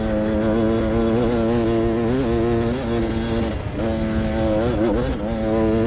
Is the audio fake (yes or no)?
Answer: no